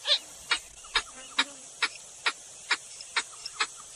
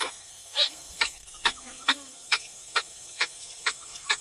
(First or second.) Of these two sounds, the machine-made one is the second